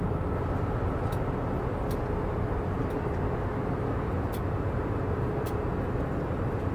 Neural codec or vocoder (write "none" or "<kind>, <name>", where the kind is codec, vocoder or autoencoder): none